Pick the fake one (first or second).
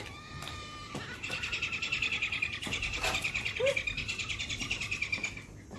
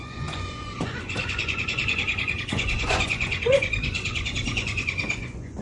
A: second